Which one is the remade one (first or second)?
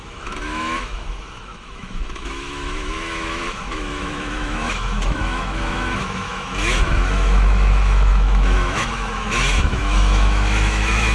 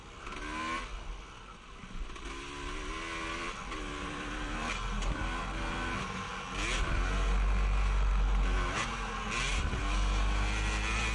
first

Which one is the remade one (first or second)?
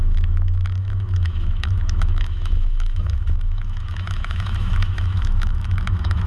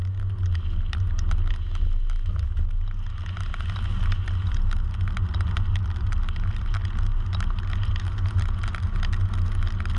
first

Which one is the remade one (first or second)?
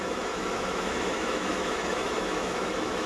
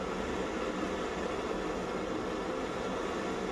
first